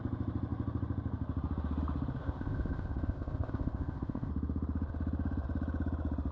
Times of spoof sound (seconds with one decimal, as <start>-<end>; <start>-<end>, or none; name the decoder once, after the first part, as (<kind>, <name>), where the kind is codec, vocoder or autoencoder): 2.2-4.3 (codec, ZipCodec)